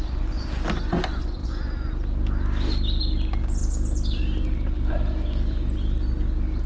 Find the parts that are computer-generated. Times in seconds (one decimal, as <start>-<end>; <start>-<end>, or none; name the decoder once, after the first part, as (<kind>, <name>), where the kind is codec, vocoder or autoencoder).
none